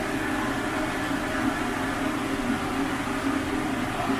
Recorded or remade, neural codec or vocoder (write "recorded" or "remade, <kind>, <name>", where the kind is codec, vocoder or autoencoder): recorded